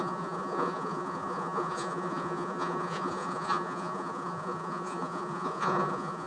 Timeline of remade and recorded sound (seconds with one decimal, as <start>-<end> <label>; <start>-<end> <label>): 0.0-6.3 remade